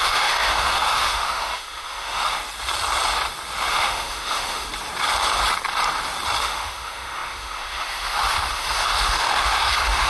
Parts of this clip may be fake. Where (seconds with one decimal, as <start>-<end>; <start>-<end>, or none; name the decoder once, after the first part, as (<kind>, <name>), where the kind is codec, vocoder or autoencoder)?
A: 0.0-2.4 (autoencoder, DAC-VAE); 3.7-4.7; 6.4-10.1